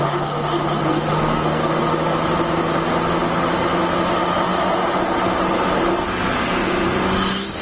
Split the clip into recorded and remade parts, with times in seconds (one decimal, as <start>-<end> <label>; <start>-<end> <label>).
0.0-0.9 recorded; 0.9-1.8 remade; 1.8-7.6 recorded